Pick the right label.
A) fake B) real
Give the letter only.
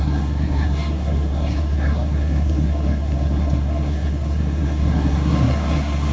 A